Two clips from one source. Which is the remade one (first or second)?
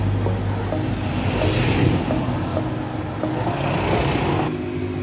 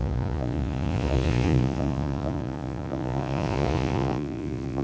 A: second